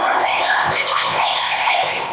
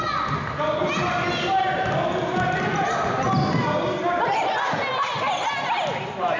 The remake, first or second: first